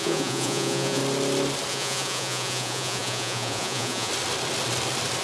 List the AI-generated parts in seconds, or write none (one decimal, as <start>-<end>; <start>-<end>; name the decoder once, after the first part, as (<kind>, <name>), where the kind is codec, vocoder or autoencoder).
0.0-1.0 (vocoder, Vocos); 1.7-4.1